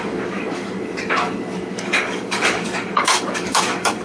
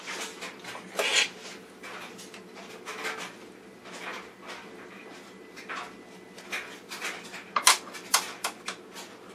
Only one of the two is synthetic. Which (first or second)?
first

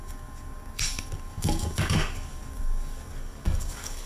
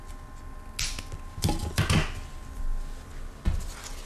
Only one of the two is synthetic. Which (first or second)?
first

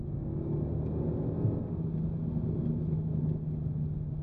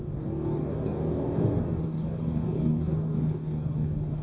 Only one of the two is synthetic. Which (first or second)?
second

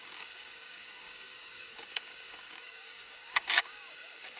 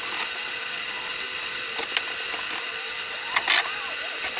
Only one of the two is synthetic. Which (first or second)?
first